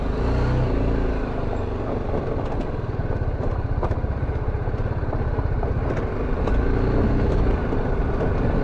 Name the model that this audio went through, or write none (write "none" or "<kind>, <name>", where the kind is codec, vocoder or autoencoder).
none